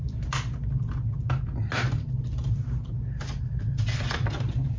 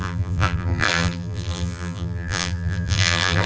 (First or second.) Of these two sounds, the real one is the first